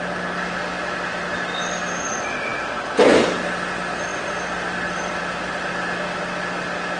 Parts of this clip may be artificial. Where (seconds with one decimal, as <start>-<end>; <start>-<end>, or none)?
none

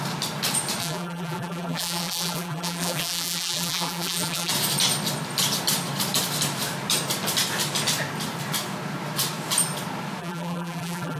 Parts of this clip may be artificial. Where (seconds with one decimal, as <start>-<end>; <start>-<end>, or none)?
0.8-4.5; 10.2-11.2

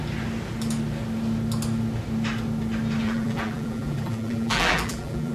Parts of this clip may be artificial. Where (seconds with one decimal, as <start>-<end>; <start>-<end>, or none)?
3.0-5.3

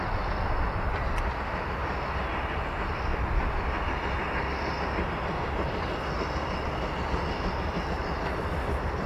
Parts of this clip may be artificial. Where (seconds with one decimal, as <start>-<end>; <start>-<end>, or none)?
none

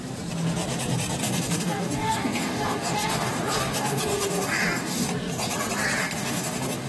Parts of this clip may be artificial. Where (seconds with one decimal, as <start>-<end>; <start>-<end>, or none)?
1.2-5.1; 6.0-6.9

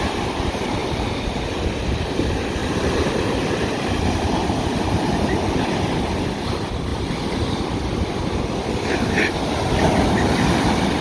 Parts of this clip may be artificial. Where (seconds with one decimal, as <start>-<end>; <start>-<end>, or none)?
0.8-1.4; 6.9-7.5

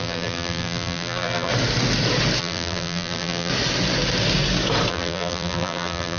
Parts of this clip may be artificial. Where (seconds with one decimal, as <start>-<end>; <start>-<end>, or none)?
0.0-1.5; 2.4-3.5; 4.9-6.2

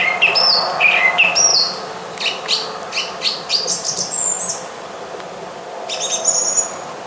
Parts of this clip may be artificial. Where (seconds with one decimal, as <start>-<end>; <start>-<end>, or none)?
1.5-2.2